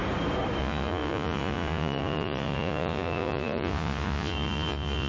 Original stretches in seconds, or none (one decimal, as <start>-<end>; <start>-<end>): 0.0-0.6